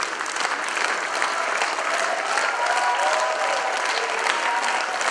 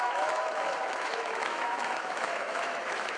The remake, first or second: second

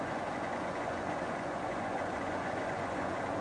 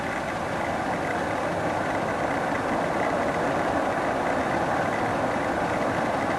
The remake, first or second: first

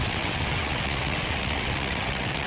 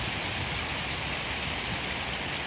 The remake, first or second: first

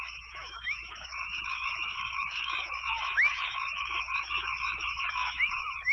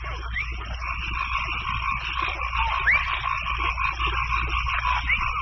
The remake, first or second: first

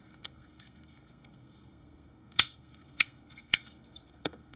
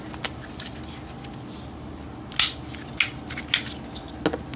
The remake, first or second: first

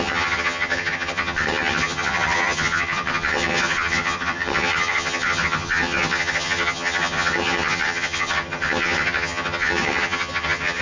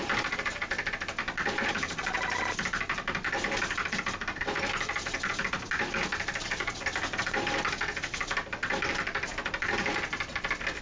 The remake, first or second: first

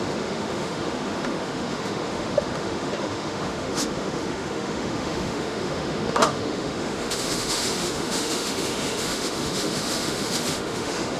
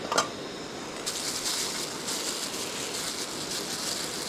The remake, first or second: first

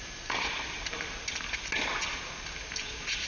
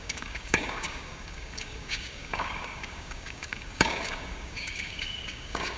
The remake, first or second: second